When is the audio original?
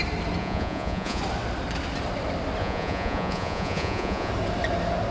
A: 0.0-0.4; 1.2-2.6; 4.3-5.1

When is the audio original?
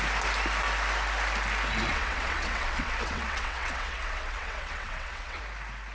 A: 0.0-1.9; 5.4-5.9